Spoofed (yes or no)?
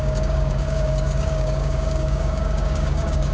yes